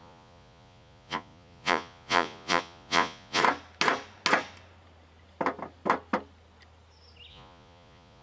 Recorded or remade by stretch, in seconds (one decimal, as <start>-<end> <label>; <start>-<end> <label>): 0.0-3.4 remade; 3.4-7.3 recorded; 7.3-8.2 remade